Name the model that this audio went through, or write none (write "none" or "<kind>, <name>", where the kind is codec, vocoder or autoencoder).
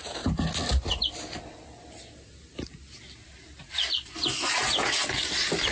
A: none